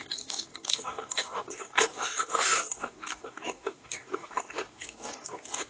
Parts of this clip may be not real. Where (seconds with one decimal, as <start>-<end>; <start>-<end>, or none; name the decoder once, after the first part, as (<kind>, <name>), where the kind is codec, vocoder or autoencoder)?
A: 0.0-5.7 (codec, DAC)